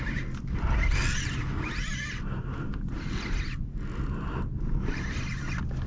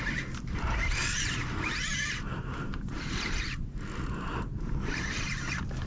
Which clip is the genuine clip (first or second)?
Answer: first